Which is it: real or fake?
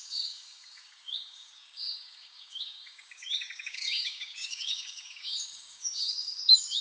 fake